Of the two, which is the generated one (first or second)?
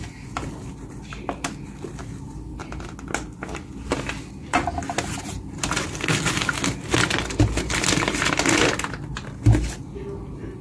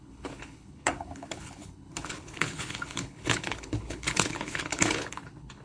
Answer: second